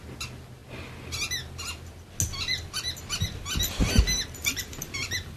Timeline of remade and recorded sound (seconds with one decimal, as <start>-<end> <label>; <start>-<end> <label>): 0.0-4.4 recorded; 4.4-5.4 remade